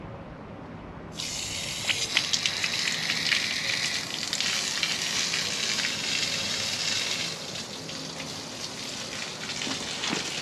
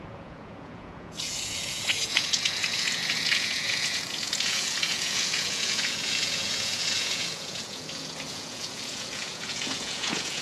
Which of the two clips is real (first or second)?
first